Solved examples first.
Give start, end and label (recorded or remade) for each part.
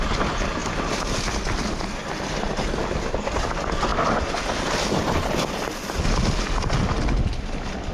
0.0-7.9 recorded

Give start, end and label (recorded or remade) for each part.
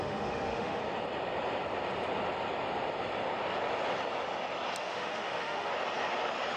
0.0-0.8 remade; 0.8-4.8 recorded; 4.8-5.7 remade; 5.7-6.6 recorded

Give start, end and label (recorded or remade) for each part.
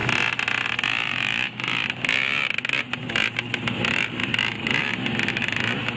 0.0-6.0 recorded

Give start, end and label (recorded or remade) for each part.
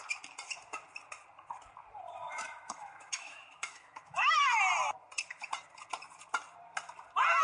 0.0-2.2 recorded; 2.2-4.6 remade; 4.6-7.4 recorded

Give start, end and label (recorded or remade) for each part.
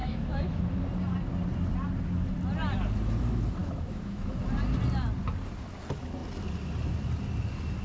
0.0-0.6 remade; 0.6-3.6 recorded; 3.6-4.3 remade; 4.3-7.8 recorded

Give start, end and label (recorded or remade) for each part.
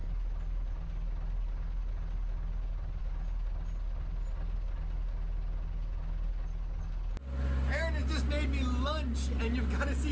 0.0-10.1 recorded